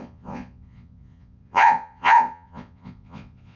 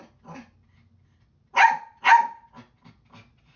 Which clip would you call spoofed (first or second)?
first